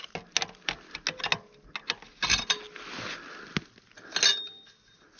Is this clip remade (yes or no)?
no